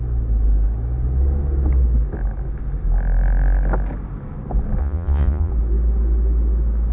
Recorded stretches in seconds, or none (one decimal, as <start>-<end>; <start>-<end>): 0.0-4.8; 5.5-6.9